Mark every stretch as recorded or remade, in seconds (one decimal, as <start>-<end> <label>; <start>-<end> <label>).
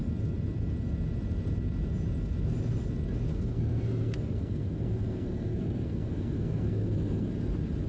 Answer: 0.0-3.3 recorded; 3.3-7.3 remade; 7.3-7.9 recorded